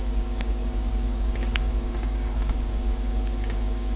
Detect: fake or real fake